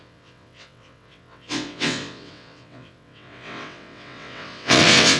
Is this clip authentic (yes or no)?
no